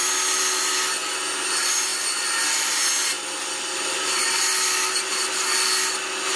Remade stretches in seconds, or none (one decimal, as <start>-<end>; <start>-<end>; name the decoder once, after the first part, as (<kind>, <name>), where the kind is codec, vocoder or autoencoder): none